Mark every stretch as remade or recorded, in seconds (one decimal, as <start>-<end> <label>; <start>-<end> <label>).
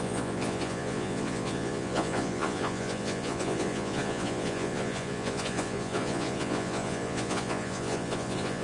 0.0-8.6 remade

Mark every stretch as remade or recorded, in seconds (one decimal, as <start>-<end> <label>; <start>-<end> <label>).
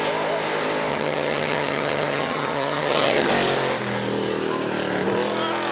0.0-0.9 recorded; 0.9-3.3 remade; 3.3-5.7 recorded